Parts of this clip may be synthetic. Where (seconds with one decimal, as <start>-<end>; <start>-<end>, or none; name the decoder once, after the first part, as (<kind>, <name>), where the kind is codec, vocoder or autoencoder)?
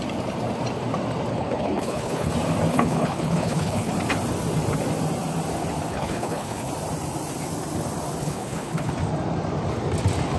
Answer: 1.3-2.3 (codec, HILCodec); 2.7-3.9; 5.9-6.7; 8.2-8.9